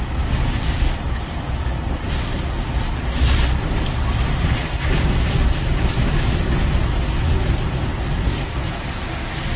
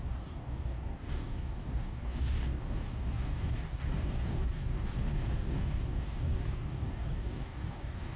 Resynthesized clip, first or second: second